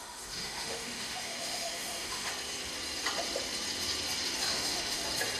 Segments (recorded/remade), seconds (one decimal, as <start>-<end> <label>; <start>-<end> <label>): 0.0-2.3 remade; 2.3-4.4 recorded; 4.4-5.0 remade; 5.0-5.4 recorded